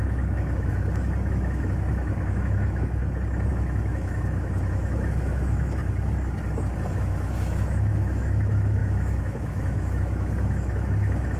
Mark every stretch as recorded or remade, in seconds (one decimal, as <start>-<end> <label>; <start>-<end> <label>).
0.0-3.0 remade; 3.0-3.5 recorded; 3.5-5.8 remade; 5.8-7.0 recorded; 7.0-11.4 remade